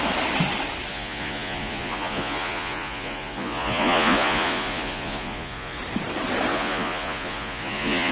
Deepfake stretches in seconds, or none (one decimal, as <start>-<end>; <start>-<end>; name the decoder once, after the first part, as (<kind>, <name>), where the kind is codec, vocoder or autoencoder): 0.9-5.8 (vocoder, Vocos); 6.5-8.1